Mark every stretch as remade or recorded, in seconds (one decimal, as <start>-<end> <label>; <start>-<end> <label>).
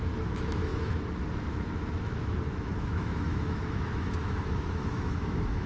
0.0-5.7 remade